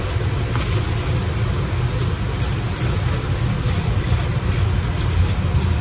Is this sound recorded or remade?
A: recorded